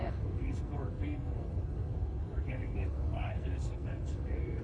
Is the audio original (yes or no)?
no